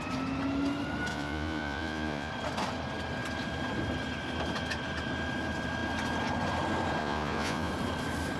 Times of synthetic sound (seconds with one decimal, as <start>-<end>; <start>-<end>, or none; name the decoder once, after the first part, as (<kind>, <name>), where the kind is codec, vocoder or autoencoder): 1.1-2.3 (vocoder, Vocos); 7.0-7.7